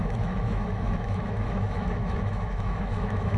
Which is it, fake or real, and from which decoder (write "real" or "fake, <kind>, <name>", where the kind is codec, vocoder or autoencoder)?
fake, autoencoder, DAC-VAE